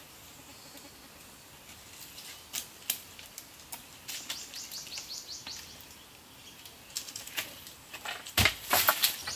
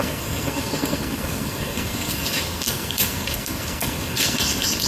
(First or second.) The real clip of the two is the first